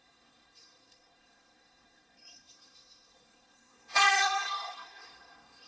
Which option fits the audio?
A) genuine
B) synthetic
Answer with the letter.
B